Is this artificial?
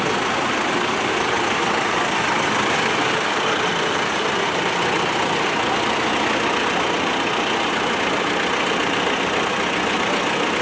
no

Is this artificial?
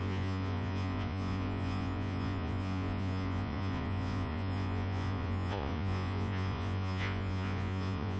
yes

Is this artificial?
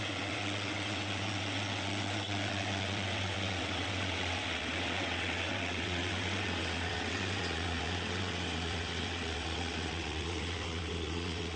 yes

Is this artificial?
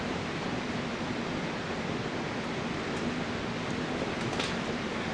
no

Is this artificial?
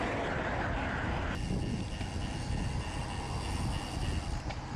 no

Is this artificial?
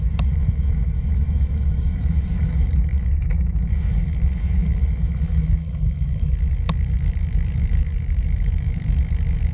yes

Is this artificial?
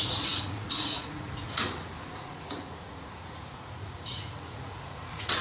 yes